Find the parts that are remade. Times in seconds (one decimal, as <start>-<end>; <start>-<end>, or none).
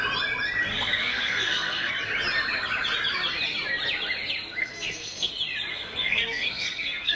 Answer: 0.7-1.9; 4.6-5.3; 5.7-7.2